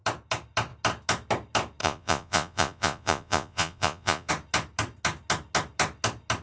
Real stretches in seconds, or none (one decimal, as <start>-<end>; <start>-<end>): 0.0-1.8; 4.3-6.4